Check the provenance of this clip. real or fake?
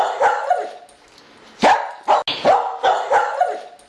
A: real